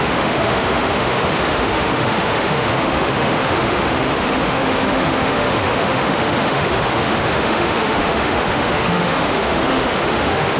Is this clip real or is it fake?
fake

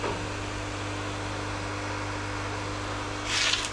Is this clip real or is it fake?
real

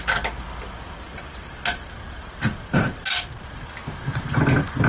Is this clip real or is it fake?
real